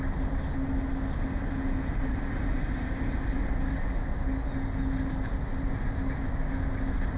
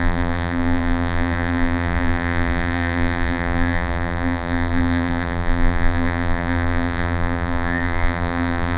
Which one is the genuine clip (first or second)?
first